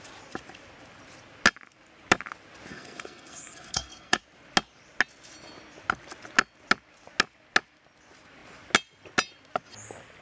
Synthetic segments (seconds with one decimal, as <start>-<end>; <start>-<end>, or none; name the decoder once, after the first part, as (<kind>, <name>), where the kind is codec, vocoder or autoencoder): 2.7-4.2 (codec, SNAC)